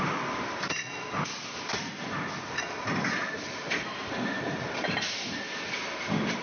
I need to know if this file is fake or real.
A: real